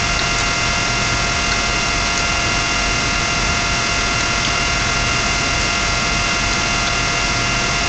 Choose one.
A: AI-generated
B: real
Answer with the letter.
B